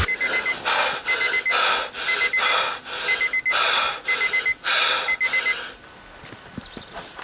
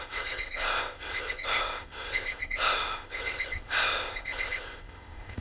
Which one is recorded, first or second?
first